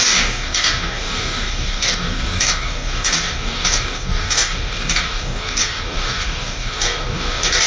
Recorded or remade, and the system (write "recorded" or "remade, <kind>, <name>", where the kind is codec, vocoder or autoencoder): remade, codec, DAC